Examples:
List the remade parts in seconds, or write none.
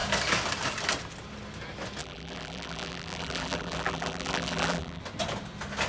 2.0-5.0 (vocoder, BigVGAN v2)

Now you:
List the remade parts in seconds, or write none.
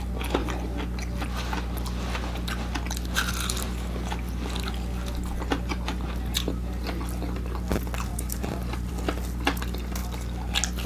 8.1-8.9 (vocoder, BigVGAN v2)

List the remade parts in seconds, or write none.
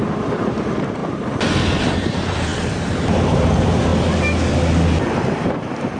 0.0-1.0 (vocoder, BigVGAN v2); 1.8-3.9; 5.0-6.0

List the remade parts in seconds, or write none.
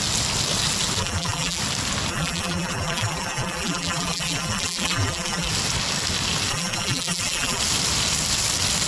1.0-1.6 (vocoder, BigVGAN v2); 2.1-5.5; 6.5-7.6